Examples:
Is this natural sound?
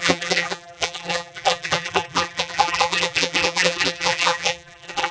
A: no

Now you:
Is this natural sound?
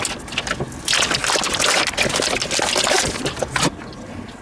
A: yes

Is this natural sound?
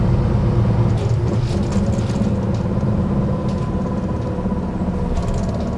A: yes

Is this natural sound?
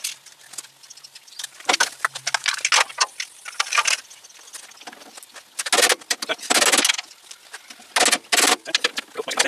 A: yes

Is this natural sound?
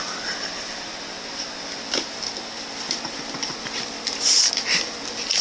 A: yes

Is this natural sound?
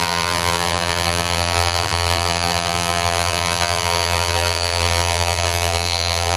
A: no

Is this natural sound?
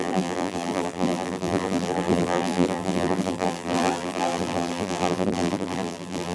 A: no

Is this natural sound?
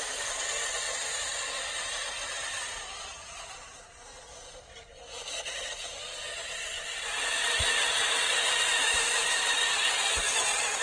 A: yes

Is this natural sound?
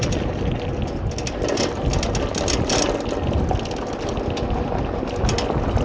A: yes